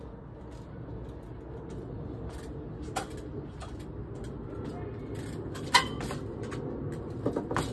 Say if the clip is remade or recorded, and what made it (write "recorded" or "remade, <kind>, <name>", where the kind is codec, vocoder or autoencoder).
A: recorded